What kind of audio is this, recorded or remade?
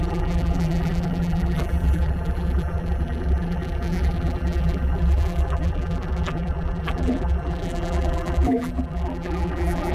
remade